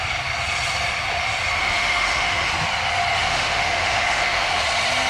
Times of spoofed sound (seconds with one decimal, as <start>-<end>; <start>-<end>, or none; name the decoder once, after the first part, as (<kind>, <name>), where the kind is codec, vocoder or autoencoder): 1.6-2.5 (autoencoder, DAC-VAE); 3.2-4.6